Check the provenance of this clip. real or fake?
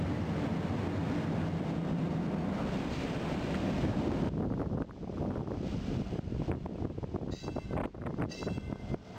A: real